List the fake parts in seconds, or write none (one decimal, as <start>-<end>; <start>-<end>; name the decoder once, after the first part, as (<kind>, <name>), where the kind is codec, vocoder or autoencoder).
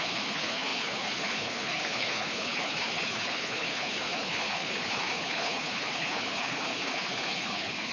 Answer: 0.0-7.9 (codec, HILCodec)